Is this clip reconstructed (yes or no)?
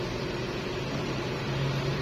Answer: yes